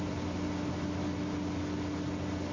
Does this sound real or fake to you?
real